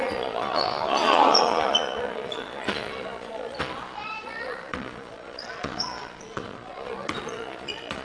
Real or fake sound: fake